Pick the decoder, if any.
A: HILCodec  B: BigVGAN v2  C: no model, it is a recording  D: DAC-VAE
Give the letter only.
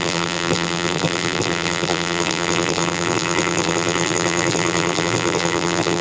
B